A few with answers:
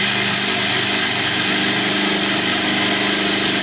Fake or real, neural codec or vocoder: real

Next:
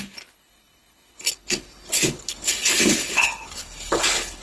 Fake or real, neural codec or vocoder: fake, codec, HILCodec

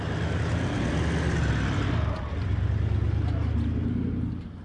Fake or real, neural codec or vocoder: real